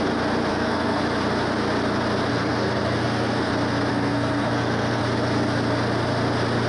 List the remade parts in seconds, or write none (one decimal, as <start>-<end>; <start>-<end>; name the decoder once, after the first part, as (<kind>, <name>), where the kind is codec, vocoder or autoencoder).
0.5-1.0 (codec, SNAC); 2.3-3.5; 3.9-5.0